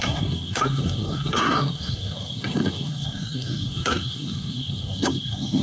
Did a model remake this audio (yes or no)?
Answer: yes